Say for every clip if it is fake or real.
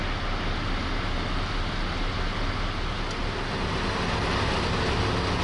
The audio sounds real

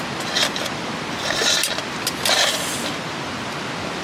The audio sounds real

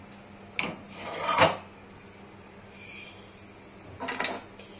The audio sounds real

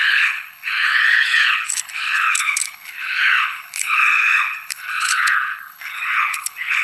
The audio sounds fake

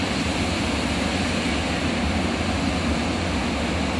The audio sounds real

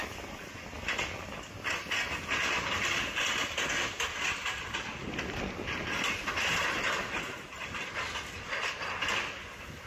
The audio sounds real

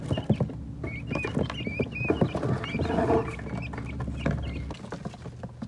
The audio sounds real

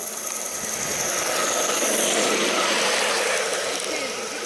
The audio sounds real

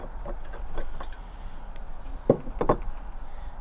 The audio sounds real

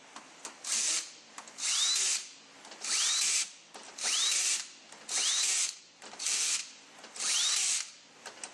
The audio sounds real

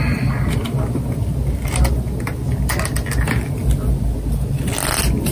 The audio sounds real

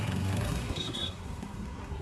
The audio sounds fake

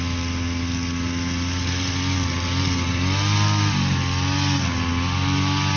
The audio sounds real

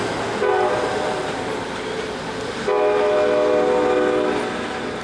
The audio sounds real